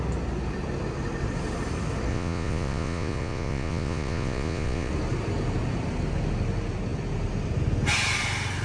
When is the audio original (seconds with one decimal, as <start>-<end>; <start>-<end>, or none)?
0.0-2.1; 4.9-8.6